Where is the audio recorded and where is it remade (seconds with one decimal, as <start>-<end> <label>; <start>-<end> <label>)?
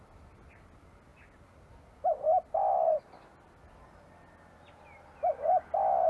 0.0-6.1 recorded